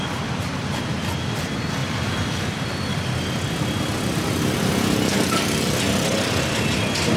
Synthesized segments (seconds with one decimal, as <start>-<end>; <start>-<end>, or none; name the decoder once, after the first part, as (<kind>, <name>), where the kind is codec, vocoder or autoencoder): none